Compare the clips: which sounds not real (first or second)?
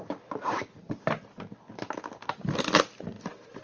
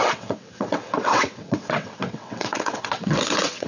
second